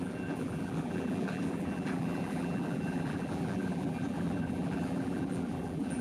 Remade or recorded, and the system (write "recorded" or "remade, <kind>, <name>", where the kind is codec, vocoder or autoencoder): remade, vocoder, BigVGAN v2